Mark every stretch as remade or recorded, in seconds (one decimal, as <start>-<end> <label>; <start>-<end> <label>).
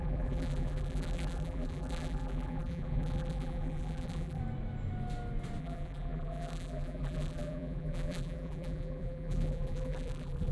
0.0-4.4 remade; 4.4-5.6 recorded; 5.6-10.5 remade